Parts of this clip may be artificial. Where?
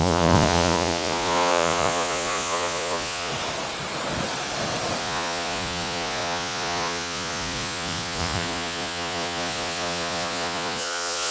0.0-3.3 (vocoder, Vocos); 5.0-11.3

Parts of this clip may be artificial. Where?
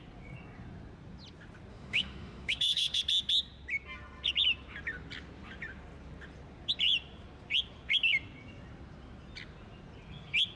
1.7-3.0 (autoencoder, DAC-VAE)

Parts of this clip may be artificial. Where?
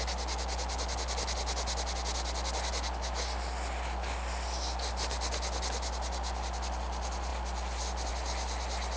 none